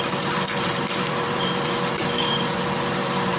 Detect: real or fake fake